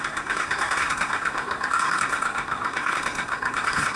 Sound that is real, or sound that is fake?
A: fake